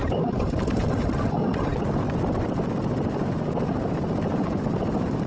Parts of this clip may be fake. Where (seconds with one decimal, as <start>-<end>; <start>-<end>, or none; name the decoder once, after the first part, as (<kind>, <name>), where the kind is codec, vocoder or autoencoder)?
none